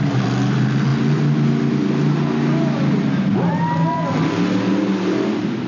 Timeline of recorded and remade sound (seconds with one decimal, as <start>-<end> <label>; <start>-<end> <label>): 0.0-5.7 recorded